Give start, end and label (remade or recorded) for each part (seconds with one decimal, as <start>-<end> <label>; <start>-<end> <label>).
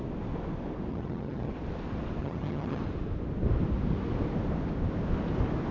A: 0.0-0.9 recorded; 0.9-1.5 remade; 1.5-2.2 recorded; 2.2-2.8 remade; 2.8-5.7 recorded